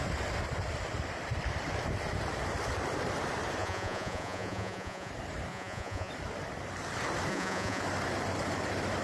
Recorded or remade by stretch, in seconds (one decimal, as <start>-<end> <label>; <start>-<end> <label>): 0.0-3.6 recorded; 3.6-5.1 remade; 5.1-5.5 recorded; 5.5-6.1 remade; 6.1-7.3 recorded; 7.3-7.8 remade; 7.8-9.0 recorded